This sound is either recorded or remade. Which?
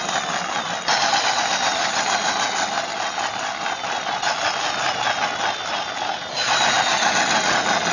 recorded